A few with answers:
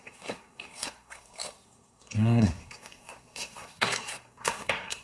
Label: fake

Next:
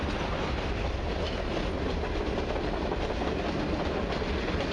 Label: real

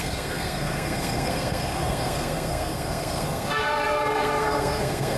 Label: fake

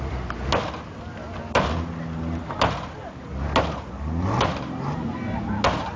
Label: real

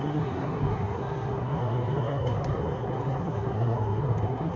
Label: fake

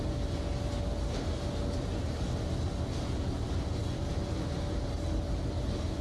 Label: real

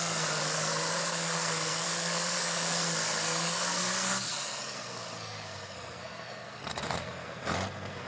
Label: fake